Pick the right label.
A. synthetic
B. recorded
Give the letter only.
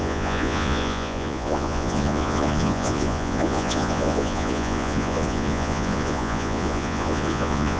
A